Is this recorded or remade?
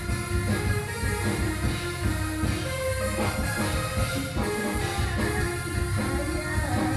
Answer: recorded